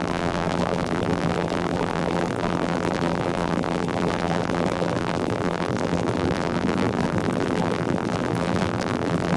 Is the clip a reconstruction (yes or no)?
yes